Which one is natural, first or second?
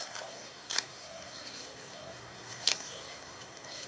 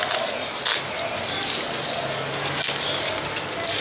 second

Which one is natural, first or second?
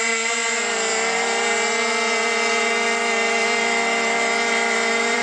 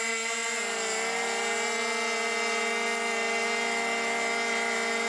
second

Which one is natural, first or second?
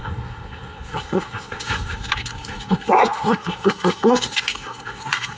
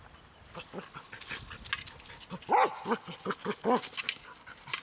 second